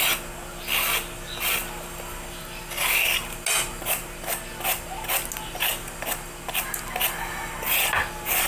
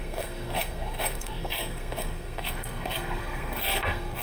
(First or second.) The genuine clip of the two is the first